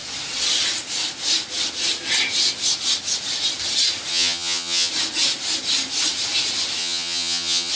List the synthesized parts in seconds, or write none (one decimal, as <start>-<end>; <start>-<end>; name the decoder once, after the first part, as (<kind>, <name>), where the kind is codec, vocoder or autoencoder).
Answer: 4.1-4.9 (vocoder, HiFi-GAN); 6.8-7.7